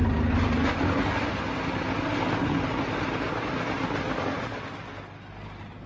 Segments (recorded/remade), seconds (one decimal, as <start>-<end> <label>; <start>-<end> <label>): 0.0-5.9 recorded